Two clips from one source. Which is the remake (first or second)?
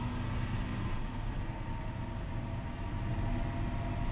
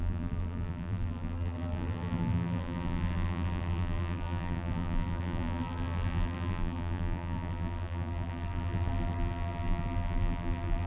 second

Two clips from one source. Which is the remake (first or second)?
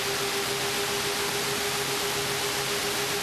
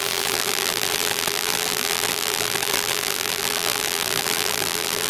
second